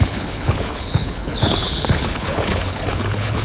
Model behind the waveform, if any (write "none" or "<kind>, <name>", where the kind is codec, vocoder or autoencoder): codec, HILCodec